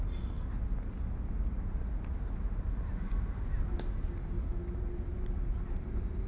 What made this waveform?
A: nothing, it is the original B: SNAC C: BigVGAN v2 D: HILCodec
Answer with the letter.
A